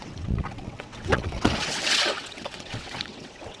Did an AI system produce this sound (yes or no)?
yes